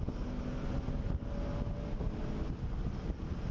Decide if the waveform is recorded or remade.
recorded